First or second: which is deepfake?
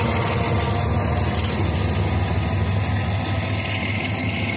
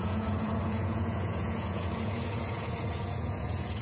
second